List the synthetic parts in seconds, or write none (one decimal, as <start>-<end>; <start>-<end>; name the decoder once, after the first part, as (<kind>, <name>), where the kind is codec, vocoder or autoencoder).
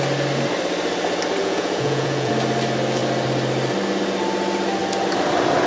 1.4-2.3 (vocoder, Vocos)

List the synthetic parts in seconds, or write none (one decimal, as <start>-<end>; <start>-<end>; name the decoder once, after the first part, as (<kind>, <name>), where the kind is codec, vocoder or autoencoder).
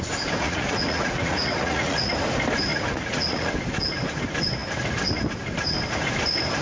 0.4-2.1 (vocoder, Vocos); 2.7-3.5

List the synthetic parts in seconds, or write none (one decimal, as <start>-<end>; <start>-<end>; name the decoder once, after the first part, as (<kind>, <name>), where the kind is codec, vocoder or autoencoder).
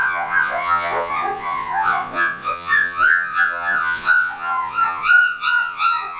0.0-6.2 (vocoder, Vocos)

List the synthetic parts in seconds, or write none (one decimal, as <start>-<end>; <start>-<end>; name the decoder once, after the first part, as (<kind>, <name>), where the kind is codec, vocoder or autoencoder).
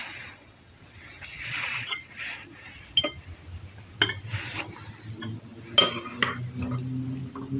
0.0-2.8 (vocoder, Vocos)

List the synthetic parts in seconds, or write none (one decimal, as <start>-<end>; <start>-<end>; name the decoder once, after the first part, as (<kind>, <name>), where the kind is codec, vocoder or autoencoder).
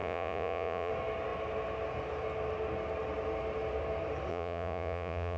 0.0-0.9 (vocoder, Vocos); 4.3-5.4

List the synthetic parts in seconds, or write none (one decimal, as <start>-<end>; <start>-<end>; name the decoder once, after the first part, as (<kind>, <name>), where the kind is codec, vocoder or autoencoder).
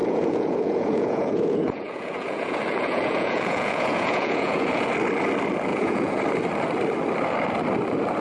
0.0-4.9 (vocoder, Vocos); 5.7-6.2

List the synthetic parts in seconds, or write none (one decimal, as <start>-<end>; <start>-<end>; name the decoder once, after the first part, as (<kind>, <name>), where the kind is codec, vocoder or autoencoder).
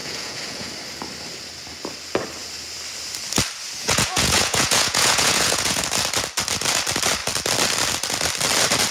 0.0-0.7 (vocoder, Vocos); 3.8-5.8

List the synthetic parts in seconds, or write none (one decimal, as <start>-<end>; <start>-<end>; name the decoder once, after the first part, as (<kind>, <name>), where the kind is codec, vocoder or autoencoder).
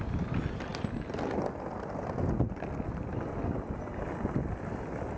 none